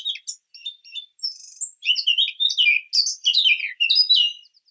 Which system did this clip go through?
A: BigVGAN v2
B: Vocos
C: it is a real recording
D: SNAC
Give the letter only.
C